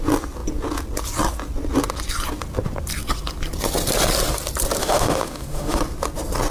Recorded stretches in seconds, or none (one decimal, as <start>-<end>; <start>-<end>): 0.0-4.8; 5.8-6.5